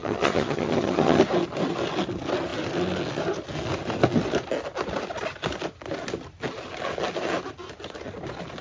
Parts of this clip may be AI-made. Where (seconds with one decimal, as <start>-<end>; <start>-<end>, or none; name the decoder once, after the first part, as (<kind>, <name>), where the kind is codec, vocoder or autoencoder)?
0.0-1.2 (vocoder, HiFi-GAN)